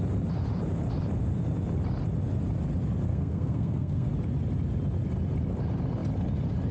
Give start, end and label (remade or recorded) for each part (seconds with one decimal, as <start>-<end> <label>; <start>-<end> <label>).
0.0-3.1 recorded; 3.1-4.1 remade; 4.1-6.7 recorded